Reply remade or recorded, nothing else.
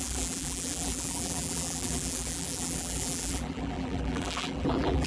remade